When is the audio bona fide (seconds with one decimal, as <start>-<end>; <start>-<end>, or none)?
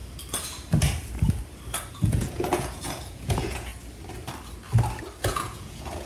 0.0-1.9; 3.7-5.2